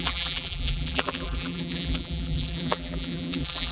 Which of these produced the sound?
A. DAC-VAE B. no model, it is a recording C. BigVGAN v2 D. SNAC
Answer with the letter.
C